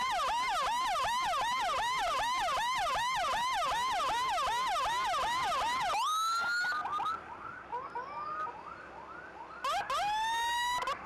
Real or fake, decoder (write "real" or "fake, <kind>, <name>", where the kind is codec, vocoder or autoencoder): real